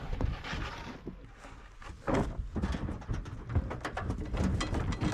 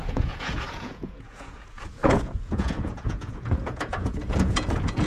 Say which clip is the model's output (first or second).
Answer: second